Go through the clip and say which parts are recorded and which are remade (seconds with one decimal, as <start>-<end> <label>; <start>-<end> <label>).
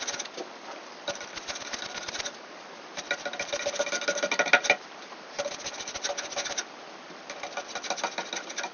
0.0-8.7 recorded